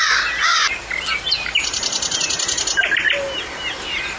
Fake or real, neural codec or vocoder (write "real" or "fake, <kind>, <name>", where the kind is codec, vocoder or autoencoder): real